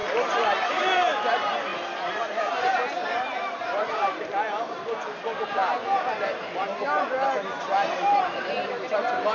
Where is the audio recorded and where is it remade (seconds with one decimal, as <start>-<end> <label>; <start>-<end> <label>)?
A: 0.0-0.7 recorded; 0.7-5.6 remade; 5.6-7.9 recorded; 7.9-9.3 remade